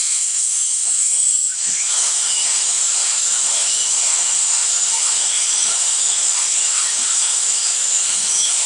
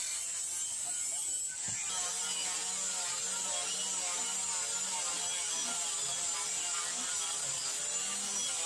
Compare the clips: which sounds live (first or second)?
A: second